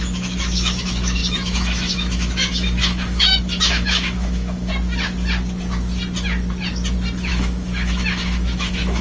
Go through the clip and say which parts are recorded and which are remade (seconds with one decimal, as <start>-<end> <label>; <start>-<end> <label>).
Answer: 0.0-4.7 remade; 4.7-7.3 recorded; 7.3-9.0 remade